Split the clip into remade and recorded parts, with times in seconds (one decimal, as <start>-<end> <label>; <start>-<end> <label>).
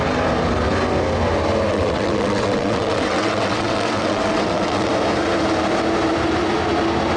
0.0-1.7 recorded; 1.7-4.9 remade; 4.9-7.2 recorded